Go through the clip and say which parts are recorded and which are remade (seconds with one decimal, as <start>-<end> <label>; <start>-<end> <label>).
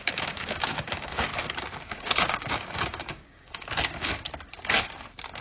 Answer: 0.0-1.3 remade; 1.3-1.9 recorded; 1.9-4.1 remade; 4.1-5.4 recorded